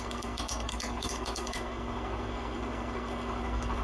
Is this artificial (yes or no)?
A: yes